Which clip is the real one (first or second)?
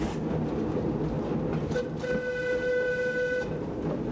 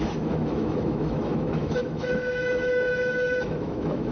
first